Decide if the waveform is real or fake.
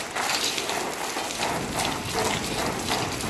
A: real